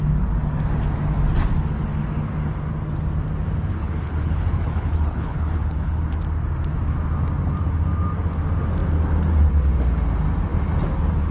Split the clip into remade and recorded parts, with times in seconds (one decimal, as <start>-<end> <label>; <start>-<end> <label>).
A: 0.0-3.8 recorded; 3.8-6.0 remade; 6.0-11.3 recorded